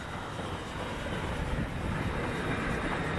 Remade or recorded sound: recorded